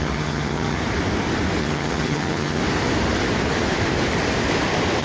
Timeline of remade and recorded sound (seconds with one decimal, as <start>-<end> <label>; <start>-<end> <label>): 0.0-0.8 remade; 0.8-1.6 recorded; 1.6-2.6 remade; 2.6-5.0 recorded